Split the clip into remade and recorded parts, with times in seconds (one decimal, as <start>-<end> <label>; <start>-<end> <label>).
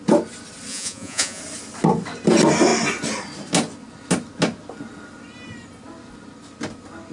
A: 0.0-0.7 recorded; 0.7-1.4 remade; 1.4-7.1 recorded